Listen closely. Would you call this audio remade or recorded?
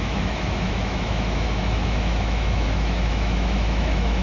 remade